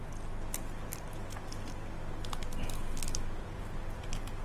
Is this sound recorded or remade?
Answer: recorded